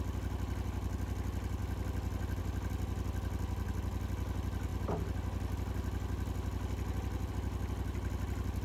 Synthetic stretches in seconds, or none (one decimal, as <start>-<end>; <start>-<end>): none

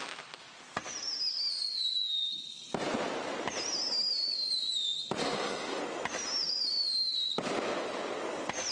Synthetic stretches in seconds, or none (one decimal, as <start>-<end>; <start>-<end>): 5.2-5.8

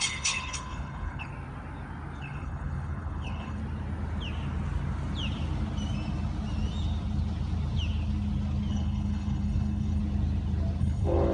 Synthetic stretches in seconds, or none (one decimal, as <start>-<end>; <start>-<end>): 0.0-1.3; 2.2-3.6; 8.7-10.0; 10.8-11.3